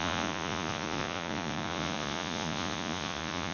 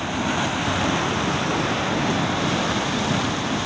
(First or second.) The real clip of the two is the second